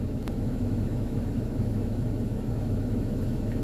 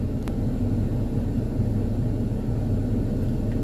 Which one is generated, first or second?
first